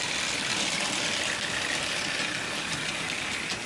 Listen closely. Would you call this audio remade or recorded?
recorded